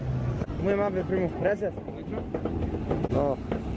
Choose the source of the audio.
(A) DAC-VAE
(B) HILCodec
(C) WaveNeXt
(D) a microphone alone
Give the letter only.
D